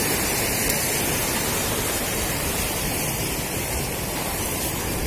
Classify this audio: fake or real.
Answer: real